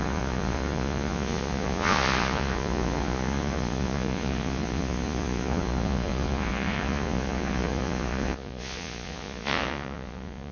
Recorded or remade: remade